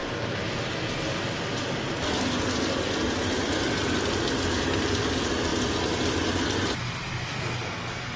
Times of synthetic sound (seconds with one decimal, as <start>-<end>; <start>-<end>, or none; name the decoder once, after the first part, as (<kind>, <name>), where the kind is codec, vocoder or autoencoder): none